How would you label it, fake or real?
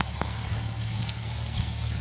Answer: fake